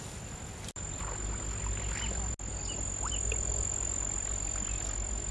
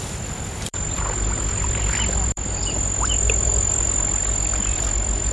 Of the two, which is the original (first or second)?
first